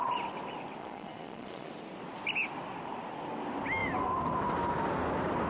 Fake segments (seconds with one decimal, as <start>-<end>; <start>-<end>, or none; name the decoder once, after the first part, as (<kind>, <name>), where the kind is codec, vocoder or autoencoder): 0.8-1.7 (vocoder, Vocos)